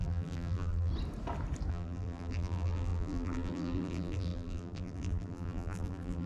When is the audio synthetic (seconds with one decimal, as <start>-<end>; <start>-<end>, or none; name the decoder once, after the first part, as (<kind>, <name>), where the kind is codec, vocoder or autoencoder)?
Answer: 0.0-0.9 (vocoder, BigVGAN v2); 1.7-6.3